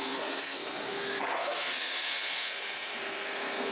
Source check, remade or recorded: remade